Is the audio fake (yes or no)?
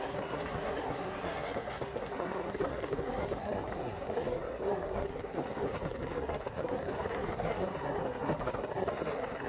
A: yes